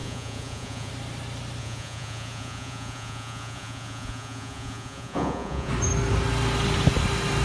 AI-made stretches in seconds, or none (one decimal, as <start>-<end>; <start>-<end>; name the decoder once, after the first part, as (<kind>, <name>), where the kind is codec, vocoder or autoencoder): 0.0-0.9 (vocoder, Vocos); 1.6-5.7